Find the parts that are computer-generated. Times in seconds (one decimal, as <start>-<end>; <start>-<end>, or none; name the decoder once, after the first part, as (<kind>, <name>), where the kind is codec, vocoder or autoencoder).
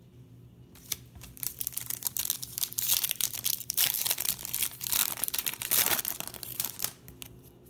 2.2-4.4 (vocoder, BigVGAN v2); 5.0-6.0